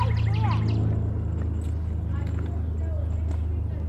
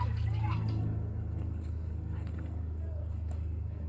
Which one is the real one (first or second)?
first